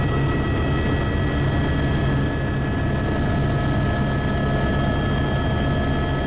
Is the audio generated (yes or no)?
no